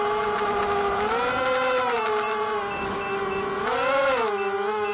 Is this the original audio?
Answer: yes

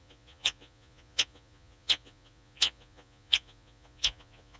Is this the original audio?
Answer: no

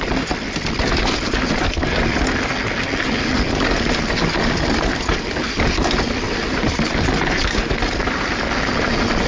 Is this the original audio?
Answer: yes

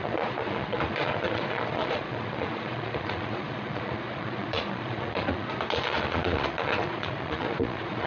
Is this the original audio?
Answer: no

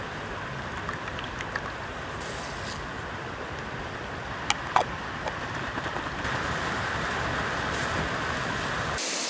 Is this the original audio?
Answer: yes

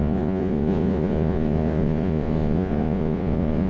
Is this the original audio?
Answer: no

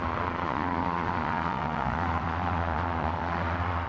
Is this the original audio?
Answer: no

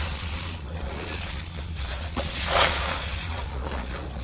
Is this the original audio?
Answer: no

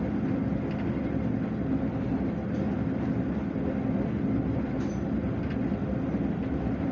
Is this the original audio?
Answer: yes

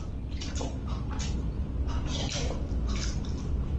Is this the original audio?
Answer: yes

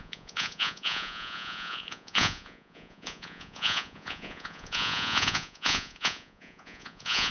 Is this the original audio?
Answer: no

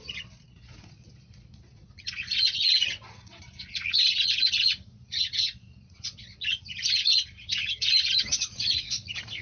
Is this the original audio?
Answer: no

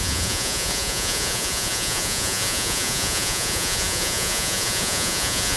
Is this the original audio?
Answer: no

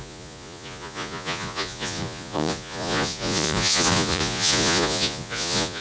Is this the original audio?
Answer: no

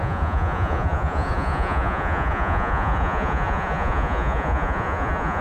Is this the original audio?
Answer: no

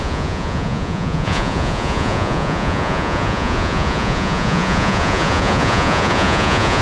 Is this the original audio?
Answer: no